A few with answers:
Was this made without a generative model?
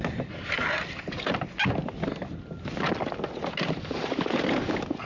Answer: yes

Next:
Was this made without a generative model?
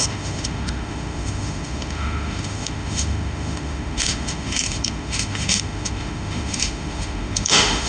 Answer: no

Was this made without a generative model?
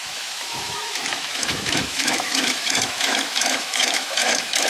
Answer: no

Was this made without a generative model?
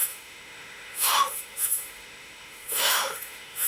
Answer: no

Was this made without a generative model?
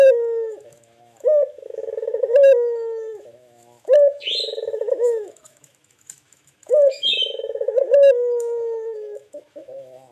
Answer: no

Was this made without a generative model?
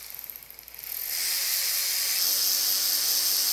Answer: yes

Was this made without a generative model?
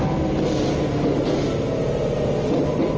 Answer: yes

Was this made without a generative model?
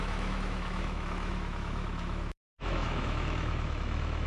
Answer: no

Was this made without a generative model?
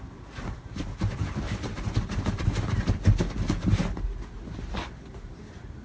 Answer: yes